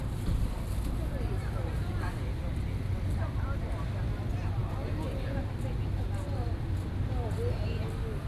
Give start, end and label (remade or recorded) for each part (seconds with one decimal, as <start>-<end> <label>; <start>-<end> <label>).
0.0-8.3 recorded